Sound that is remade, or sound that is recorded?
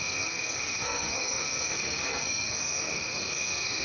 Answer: remade